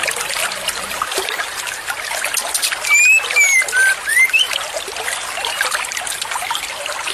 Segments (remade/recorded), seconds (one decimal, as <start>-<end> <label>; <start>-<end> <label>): 0.0-7.1 recorded